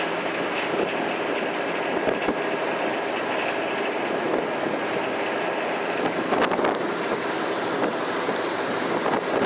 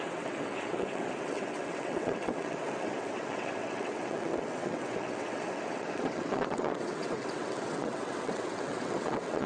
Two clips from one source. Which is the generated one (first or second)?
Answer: second